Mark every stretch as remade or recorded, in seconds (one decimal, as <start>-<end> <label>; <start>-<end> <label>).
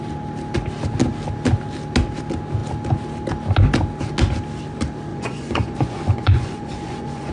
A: 0.0-5.1 recorded; 5.1-7.3 remade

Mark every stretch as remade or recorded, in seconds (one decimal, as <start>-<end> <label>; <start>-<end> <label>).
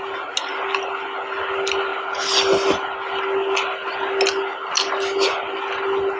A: 0.0-6.2 recorded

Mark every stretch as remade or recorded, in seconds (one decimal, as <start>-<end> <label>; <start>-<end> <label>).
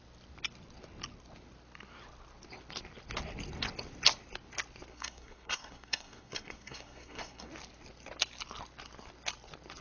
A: 0.0-4.9 recorded; 4.9-7.5 remade; 7.5-9.8 recorded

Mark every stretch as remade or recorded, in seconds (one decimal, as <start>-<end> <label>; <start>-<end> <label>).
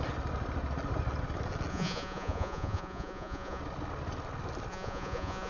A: 0.0-1.7 recorded; 1.7-3.6 remade; 3.6-4.7 recorded; 4.7-5.5 remade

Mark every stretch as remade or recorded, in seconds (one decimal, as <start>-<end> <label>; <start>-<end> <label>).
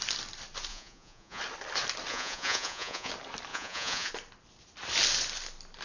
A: 0.0-0.7 recorded; 0.7-1.4 remade; 1.4-2.1 recorded; 2.1-3.1 remade; 3.1-3.5 recorded; 3.5-4.1 remade; 4.1-5.8 recorded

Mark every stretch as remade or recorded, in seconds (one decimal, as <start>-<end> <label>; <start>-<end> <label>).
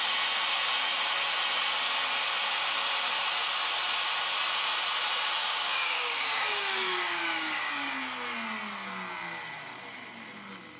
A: 0.0-5.4 recorded; 5.4-7.9 remade; 7.9-10.8 recorded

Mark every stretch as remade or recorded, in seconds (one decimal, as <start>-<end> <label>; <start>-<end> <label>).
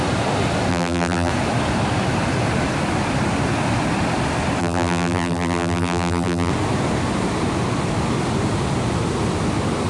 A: 0.0-0.7 recorded; 0.7-1.3 remade; 1.3-4.6 recorded; 4.6-6.5 remade; 6.5-9.9 recorded